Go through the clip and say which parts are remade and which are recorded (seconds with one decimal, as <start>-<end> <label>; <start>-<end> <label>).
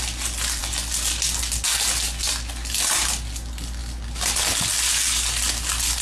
0.0-6.0 recorded